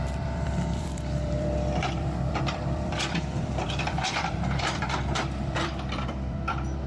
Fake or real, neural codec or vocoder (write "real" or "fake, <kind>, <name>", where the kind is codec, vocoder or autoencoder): fake, vocoder, BigVGAN v2